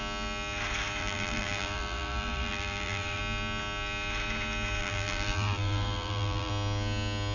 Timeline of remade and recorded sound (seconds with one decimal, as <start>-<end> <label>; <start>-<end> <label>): 0.0-1.0 recorded; 1.0-3.2 remade; 3.2-4.8 recorded; 4.8-6.5 remade; 6.5-7.3 recorded